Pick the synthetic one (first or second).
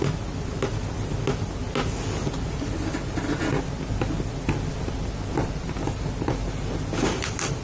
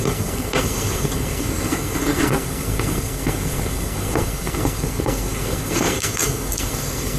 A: second